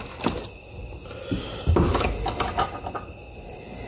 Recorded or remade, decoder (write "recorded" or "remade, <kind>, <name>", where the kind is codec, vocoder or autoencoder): recorded